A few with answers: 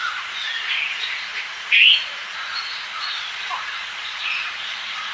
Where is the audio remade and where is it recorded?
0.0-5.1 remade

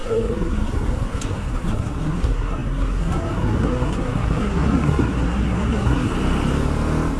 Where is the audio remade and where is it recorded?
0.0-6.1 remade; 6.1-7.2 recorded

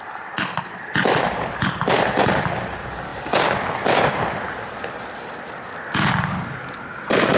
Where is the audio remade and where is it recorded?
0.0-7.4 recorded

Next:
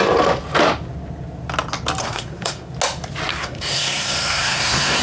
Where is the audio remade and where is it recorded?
0.0-2.0 recorded; 2.0-2.7 remade; 2.7-3.3 recorded; 3.3-5.0 remade

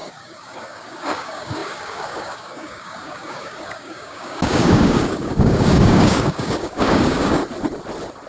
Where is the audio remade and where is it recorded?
0.0-7.4 remade; 7.4-8.3 recorded